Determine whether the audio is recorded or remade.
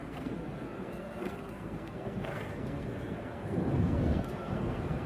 remade